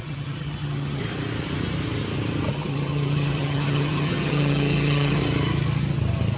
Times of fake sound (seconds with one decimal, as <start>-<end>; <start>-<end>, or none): 0.0-1.0; 2.5-5.2